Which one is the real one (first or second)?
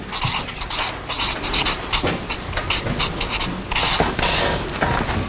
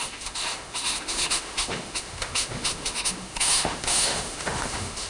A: first